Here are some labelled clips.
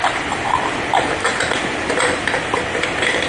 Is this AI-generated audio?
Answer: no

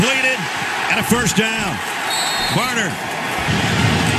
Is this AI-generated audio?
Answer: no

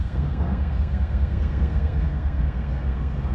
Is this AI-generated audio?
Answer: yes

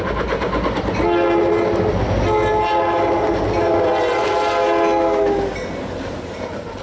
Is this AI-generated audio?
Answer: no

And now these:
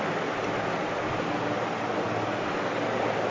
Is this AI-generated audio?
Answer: no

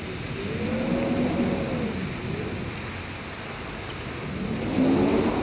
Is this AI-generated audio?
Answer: no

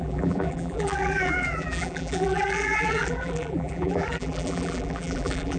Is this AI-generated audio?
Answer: yes